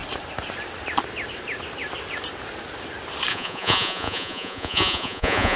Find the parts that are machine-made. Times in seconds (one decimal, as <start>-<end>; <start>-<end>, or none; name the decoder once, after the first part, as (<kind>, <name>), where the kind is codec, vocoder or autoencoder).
3.3-5.6 (vocoder, Vocos)